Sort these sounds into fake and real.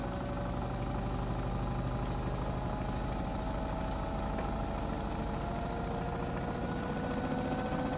real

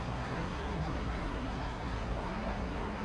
fake